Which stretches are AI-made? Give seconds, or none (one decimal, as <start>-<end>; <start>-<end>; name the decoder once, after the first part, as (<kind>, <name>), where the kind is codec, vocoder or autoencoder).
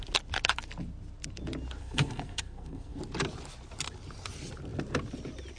1.8-3.0 (codec, SNAC)